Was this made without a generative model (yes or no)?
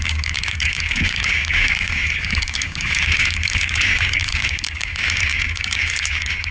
no